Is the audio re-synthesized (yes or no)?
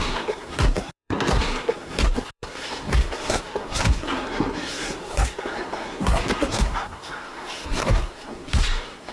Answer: yes